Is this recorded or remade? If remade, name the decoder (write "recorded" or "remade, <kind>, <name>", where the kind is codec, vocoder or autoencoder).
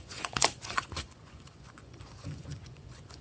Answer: remade, vocoder, Vocos